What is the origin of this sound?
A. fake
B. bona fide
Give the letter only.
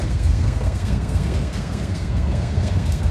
A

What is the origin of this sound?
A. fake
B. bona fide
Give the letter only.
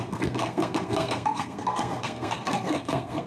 A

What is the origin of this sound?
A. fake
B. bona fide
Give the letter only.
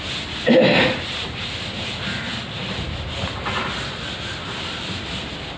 B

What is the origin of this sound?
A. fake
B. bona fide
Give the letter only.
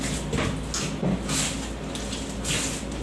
B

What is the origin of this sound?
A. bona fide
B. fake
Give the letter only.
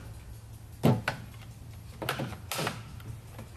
A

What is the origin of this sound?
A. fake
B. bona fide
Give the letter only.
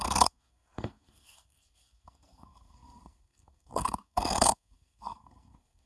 A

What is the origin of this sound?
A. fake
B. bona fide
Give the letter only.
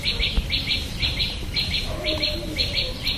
B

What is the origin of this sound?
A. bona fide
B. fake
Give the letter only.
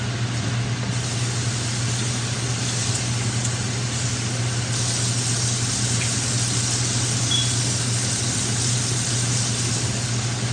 A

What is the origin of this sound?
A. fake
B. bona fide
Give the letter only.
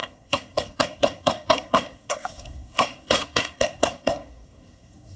A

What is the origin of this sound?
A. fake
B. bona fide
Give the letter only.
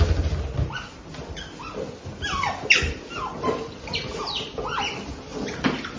B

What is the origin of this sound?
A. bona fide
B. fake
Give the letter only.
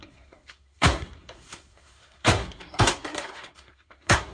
B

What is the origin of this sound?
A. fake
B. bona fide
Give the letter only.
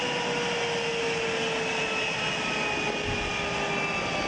B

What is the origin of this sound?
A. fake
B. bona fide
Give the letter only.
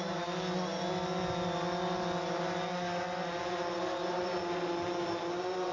B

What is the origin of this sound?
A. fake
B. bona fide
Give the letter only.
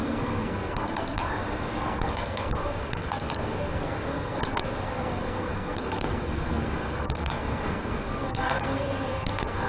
A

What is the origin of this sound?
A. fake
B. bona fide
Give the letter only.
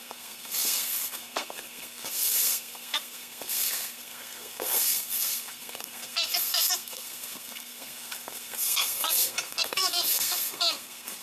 A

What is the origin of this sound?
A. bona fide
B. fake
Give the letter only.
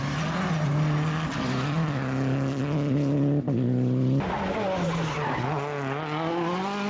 A